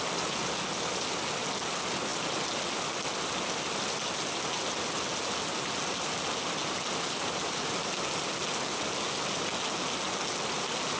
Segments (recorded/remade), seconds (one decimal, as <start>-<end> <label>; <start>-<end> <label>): 0.0-11.0 recorded